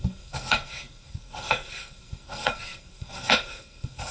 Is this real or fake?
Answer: fake